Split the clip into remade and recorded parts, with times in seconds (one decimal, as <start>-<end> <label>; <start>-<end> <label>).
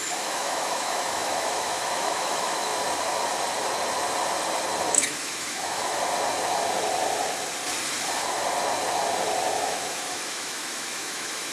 0.0-2.7 remade; 2.7-4.9 recorded; 4.9-5.8 remade; 5.8-9.5 recorded; 9.5-11.5 remade